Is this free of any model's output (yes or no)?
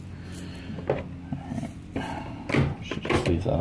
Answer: yes